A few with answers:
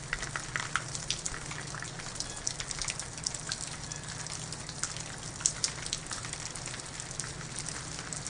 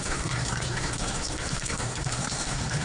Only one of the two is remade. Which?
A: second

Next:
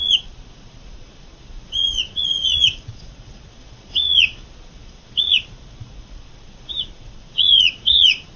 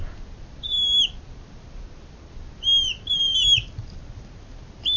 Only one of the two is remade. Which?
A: first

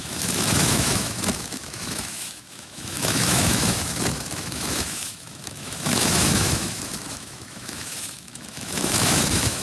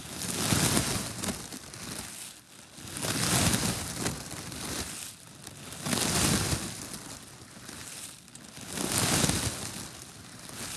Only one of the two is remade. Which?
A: first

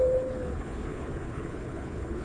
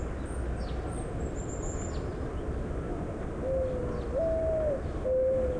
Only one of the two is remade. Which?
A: first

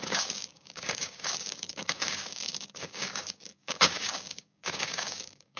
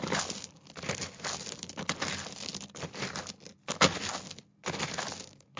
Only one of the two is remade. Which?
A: first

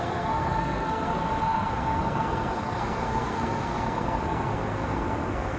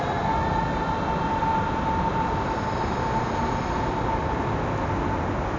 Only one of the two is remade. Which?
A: first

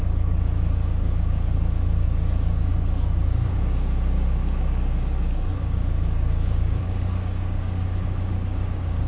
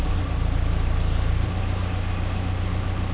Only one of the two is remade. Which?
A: first